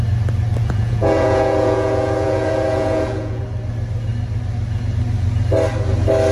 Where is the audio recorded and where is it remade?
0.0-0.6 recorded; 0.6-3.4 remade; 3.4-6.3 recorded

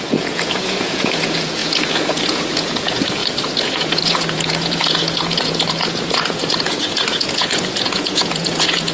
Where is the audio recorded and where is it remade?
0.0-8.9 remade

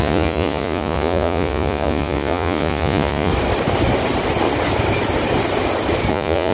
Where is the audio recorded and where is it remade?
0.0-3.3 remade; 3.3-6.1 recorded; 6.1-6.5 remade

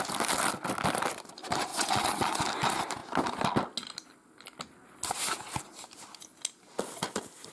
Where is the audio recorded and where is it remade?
0.0-1.7 recorded; 1.7-2.4 remade; 2.4-7.5 recorded